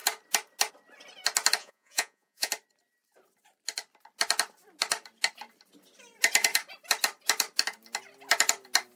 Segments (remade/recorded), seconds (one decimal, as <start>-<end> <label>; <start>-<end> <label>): 0.0-1.6 recorded; 1.6-2.5 remade; 2.5-9.0 recorded